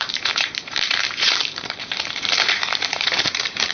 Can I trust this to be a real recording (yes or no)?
no